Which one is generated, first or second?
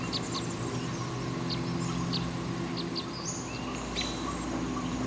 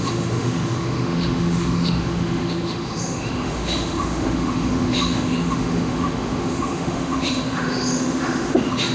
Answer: second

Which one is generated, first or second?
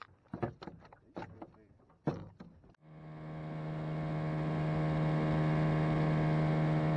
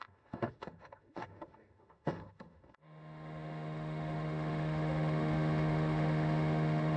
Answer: second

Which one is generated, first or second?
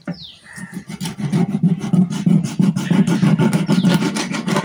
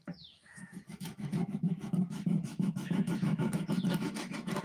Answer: second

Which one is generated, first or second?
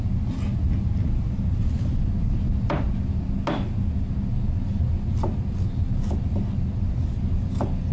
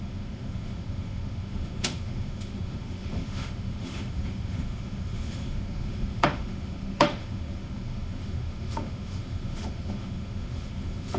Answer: second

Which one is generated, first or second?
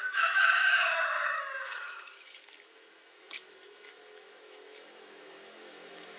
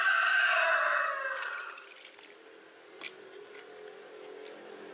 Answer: first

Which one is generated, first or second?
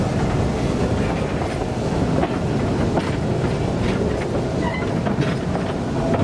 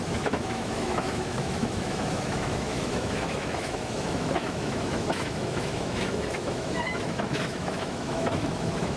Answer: second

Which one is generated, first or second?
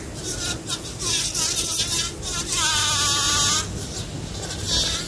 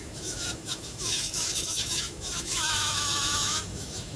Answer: second